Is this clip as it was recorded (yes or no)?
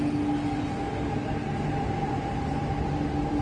yes